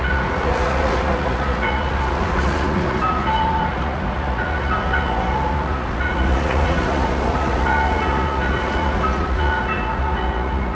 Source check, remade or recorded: remade